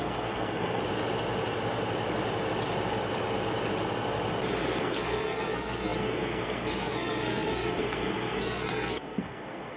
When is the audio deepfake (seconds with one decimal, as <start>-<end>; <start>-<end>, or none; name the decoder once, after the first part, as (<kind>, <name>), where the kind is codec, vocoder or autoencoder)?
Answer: 0.0-0.8 (codec, SNAC); 4.8-9.8